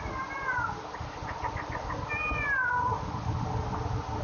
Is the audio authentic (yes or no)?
yes